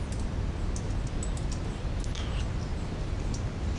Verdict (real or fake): real